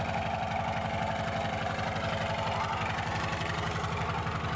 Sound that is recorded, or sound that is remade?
recorded